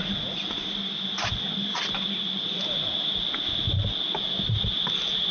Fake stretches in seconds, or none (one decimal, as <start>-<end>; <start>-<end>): none